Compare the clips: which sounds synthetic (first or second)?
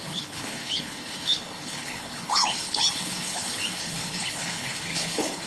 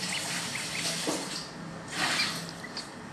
first